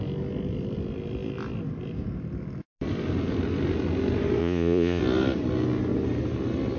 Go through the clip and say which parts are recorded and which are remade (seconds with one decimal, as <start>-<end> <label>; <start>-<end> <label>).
0.0-4.4 recorded; 4.4-5.0 remade; 5.0-6.8 recorded